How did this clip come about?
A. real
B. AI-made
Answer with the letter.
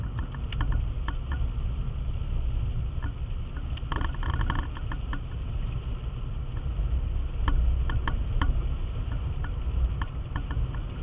A